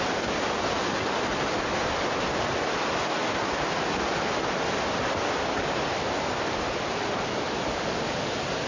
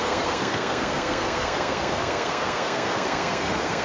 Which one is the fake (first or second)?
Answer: second